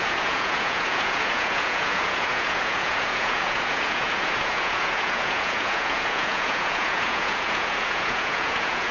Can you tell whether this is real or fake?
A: fake